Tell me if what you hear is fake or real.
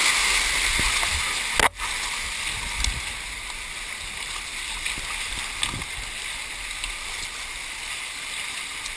real